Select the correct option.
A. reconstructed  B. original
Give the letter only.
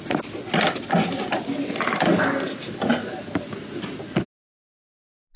B